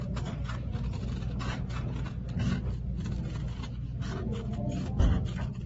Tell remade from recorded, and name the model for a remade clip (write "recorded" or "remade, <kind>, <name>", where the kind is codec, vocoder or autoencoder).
recorded